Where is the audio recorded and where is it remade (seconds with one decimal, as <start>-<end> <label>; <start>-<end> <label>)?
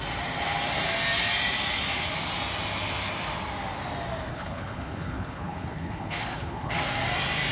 0.0-4.3 recorded; 4.3-6.7 remade; 6.7-7.5 recorded